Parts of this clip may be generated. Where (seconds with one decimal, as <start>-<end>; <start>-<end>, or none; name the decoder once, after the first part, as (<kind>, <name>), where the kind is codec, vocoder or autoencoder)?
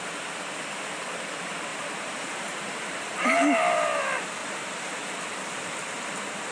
1.7-3.2 (vocoder, BigVGAN v2); 4.4-5.0